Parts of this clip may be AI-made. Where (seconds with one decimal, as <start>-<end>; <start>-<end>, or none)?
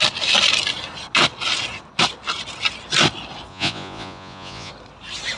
3.5-4.7